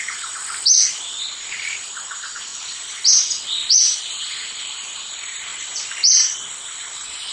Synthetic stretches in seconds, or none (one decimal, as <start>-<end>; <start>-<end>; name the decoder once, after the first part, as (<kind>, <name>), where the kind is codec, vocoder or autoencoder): 0.0-0.4 (vocoder, BigVGAN v2); 0.9-2.5; 4.2-5.5